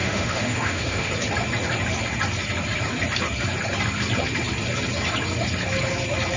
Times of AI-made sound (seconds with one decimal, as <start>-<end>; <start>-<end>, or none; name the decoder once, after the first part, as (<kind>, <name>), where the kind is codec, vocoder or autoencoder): 0.0-1.1 (autoencoder, DAC-VAE)